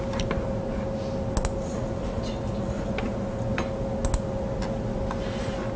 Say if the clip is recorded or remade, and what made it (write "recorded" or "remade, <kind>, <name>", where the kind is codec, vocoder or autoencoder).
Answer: recorded